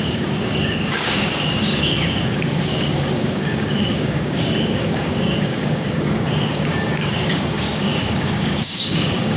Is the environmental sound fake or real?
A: fake